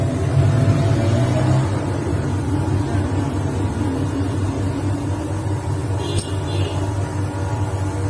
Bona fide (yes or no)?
yes